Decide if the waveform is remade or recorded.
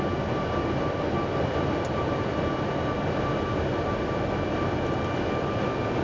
recorded